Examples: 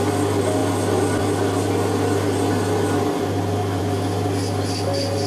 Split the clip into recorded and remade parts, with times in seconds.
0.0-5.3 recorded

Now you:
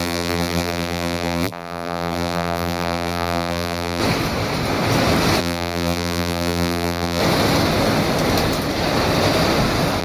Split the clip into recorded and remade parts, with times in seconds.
0.0-4.0 remade; 4.0-5.4 recorded; 5.4-7.2 remade; 7.2-10.0 recorded